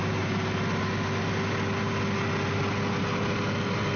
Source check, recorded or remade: recorded